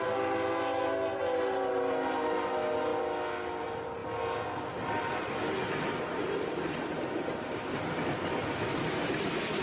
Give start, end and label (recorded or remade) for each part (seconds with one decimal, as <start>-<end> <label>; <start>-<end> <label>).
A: 0.0-9.6 recorded